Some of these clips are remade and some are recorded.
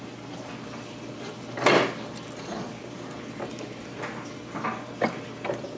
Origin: recorded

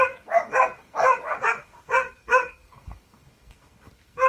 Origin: remade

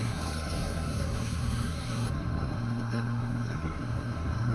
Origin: remade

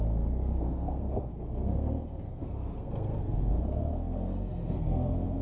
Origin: remade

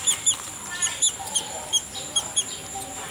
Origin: recorded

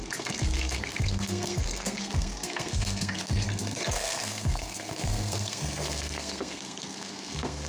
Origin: remade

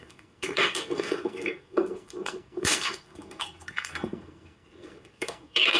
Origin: remade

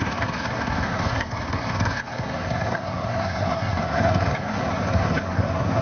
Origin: remade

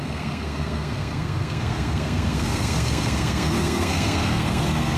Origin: remade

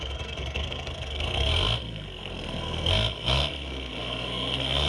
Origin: remade